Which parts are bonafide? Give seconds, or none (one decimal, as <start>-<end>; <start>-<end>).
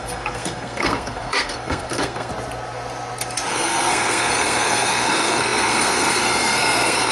2.3-3.5